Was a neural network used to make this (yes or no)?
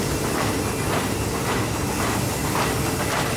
no